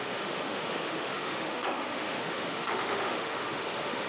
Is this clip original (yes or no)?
no